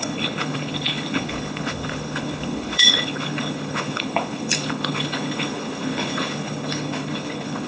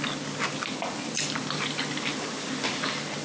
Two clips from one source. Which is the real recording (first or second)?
second